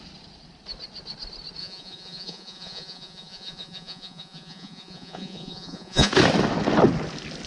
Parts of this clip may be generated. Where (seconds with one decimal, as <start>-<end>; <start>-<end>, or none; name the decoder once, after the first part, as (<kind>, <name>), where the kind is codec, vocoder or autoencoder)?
1.6-6.1 (vocoder, Vocos)